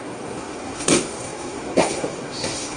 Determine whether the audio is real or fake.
fake